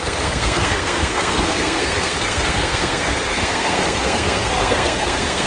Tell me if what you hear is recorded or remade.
remade